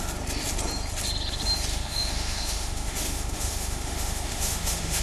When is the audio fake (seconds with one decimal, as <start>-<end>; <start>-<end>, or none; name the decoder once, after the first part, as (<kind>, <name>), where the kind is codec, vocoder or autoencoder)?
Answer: 1.7-5.0 (autoencoder, DAC-VAE)